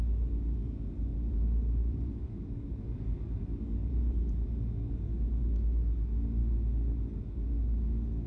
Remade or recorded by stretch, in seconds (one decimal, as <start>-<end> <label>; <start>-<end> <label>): 0.0-1.1 recorded; 1.1-3.4 remade; 3.4-3.8 recorded; 3.8-4.9 remade; 4.9-8.3 recorded